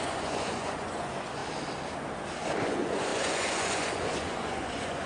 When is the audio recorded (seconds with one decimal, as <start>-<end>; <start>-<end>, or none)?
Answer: 1.4-2.6